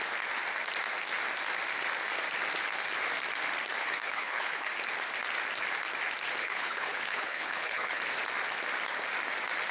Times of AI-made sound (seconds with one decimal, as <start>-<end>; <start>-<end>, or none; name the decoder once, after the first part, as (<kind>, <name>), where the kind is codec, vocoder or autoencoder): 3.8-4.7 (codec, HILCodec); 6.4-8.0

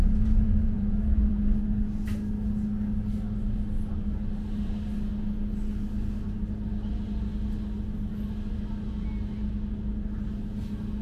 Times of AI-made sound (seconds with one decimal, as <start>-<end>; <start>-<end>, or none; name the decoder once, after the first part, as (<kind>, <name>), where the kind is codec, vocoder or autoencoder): 0.0-1.6 (vocoder, Vocos)

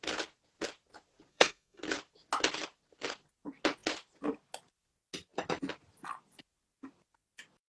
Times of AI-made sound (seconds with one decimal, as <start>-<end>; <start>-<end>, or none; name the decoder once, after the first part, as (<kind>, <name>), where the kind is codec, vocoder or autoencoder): 1.3-1.8 (codec, SNAC)